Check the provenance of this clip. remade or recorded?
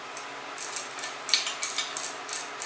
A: recorded